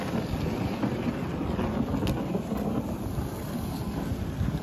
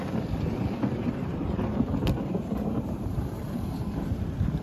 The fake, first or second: second